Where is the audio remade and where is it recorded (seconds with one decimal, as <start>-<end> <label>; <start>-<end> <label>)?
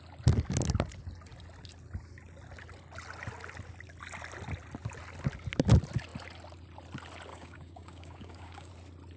0.0-7.3 recorded; 7.3-8.7 remade; 8.7-9.2 recorded